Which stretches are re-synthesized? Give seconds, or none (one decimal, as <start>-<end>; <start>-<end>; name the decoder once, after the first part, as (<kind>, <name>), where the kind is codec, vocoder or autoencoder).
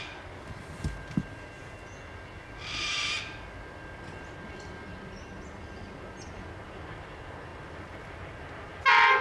none